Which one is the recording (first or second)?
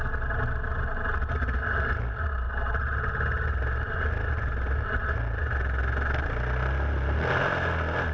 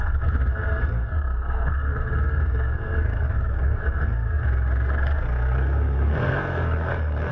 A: first